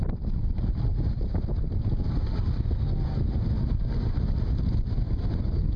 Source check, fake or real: real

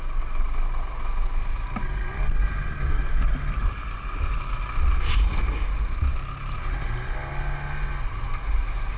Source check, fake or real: real